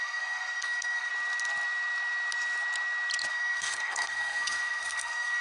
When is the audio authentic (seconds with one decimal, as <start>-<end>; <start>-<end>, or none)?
1.1-3.3